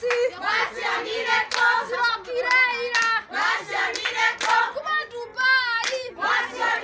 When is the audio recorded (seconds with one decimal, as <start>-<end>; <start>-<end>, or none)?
0.0-6.8